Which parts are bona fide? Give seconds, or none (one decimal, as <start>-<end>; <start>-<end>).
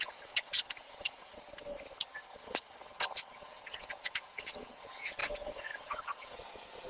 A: 1.3-3.1